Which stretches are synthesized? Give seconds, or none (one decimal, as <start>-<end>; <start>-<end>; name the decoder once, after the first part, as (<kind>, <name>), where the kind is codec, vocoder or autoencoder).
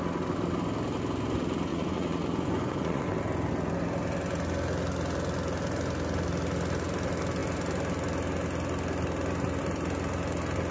1.7-3.1 (vocoder, Vocos)